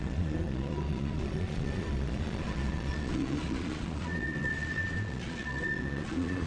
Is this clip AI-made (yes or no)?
yes